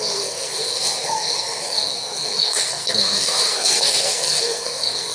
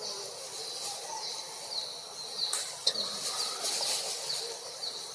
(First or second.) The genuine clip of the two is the second